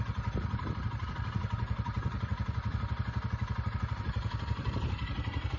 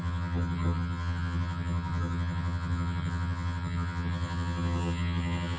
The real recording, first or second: first